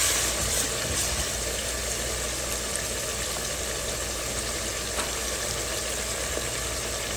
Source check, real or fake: real